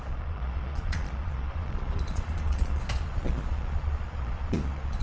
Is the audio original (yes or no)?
no